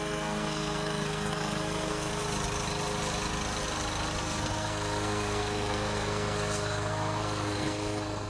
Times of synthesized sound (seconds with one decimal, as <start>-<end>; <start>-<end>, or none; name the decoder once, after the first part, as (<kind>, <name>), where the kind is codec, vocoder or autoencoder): 0.0-2.1 (codec, SNAC); 4.2-8.3